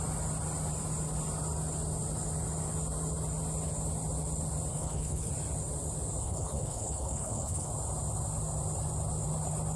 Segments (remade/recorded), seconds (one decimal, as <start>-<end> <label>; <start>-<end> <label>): 0.0-4.7 recorded; 4.7-5.3 remade; 5.3-6.2 recorded; 6.2-7.7 remade; 7.7-9.8 recorded